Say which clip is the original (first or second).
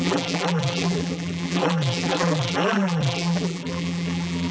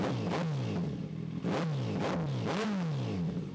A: second